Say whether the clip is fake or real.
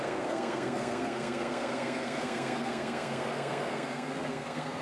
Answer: fake